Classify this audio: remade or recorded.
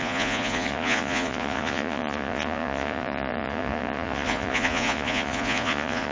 remade